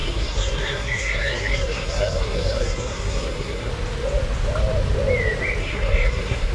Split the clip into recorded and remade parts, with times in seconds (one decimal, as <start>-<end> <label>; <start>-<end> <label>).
0.0-3.7 remade; 3.7-5.6 recorded; 5.6-6.5 remade

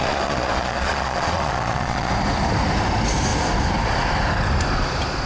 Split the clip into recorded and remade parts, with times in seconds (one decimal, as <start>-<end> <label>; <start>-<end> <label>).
0.0-2.1 remade; 2.1-5.3 recorded

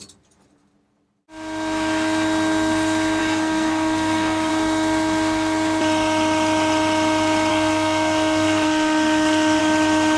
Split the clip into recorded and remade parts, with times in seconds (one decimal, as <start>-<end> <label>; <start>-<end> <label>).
0.0-3.2 recorded; 3.2-4.5 remade; 4.5-7.5 recorded; 7.5-9.6 remade; 9.6-10.2 recorded